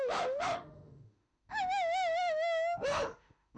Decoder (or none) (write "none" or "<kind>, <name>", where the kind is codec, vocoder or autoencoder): autoencoder, DAC-VAE